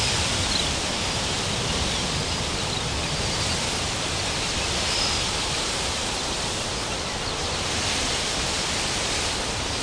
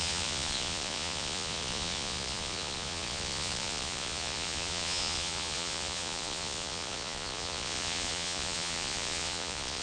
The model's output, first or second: second